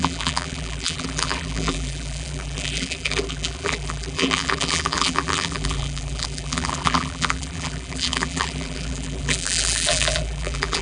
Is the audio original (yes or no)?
no